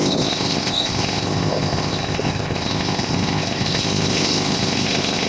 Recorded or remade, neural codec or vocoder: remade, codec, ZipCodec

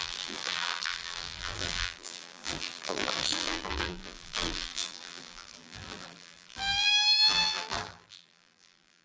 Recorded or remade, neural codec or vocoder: remade, vocoder, BigVGAN v2